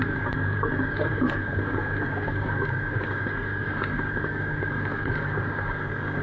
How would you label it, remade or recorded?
remade